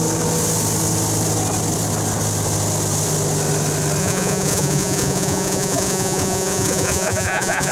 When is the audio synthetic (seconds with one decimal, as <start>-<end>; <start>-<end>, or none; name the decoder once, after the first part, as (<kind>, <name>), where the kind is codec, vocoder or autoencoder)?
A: 4.0-7.7 (vocoder, Vocos)